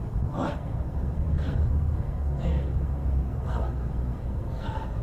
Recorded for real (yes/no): no